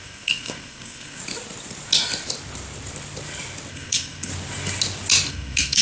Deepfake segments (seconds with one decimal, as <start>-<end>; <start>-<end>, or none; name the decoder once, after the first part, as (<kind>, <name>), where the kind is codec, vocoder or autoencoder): 0.0-1.2 (codec, SNAC); 3.7-4.3; 5.3-5.8